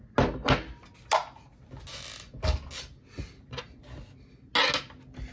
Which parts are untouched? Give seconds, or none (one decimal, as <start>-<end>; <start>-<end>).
0.0-5.3